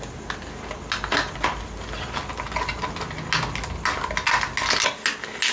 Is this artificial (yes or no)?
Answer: no